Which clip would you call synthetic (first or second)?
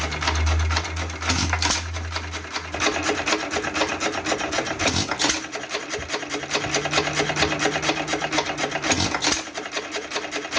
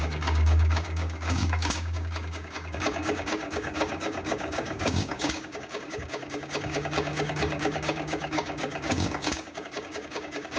second